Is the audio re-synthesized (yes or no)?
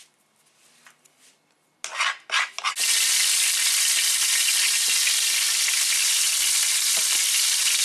no